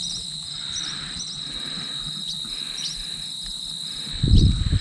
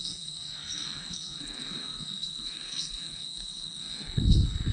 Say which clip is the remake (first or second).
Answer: second